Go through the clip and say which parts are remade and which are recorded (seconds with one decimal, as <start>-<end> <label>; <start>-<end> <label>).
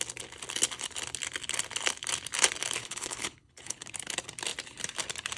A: 0.0-2.8 recorded; 2.8-3.9 remade; 3.9-5.4 recorded